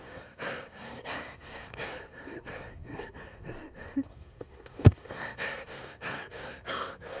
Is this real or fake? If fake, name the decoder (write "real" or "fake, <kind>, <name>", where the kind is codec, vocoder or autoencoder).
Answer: fake, codec, SNAC